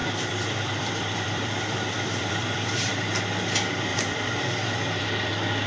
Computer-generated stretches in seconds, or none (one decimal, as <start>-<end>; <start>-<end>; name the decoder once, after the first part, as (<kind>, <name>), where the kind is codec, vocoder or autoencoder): 0.0-2.9 (vocoder, BigVGAN v2); 3.9-5.0